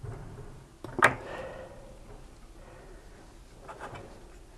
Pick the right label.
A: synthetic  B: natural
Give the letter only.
B